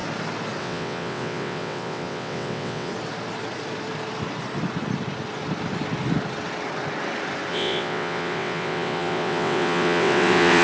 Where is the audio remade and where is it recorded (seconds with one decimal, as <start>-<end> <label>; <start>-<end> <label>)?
0.0-0.6 recorded; 0.6-2.9 remade; 2.9-7.5 recorded; 7.5-10.6 remade